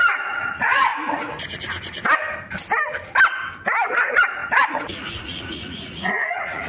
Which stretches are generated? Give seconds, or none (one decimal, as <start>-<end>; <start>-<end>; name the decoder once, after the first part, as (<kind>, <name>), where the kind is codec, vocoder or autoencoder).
0.0-0.9 (vocoder, Vocos); 4.0-6.7